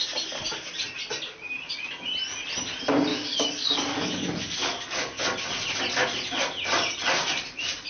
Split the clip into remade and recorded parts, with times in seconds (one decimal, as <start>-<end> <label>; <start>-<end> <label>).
0.0-3.1 recorded; 3.1-5.2 remade; 5.2-7.9 recorded